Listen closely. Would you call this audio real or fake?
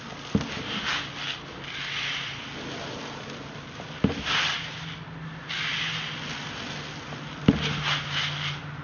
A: real